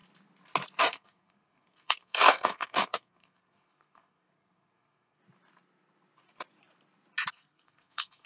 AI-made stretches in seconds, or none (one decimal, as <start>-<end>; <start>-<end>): 0.8-5.2; 7.3-8.3